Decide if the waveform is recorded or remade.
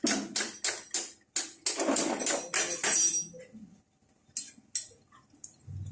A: recorded